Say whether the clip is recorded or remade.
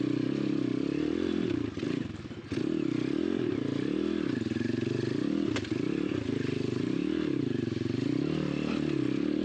recorded